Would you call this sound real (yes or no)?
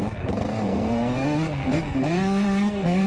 no